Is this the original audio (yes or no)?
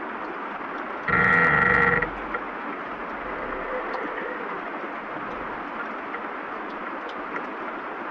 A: yes